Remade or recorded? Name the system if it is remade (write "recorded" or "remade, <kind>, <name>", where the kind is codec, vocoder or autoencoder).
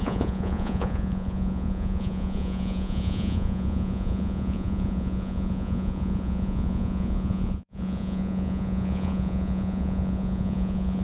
remade, vocoder, Vocos